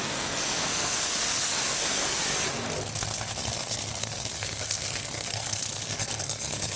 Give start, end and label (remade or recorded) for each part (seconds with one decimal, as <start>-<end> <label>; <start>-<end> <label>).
0.0-2.2 remade; 2.2-3.4 recorded; 3.4-6.8 remade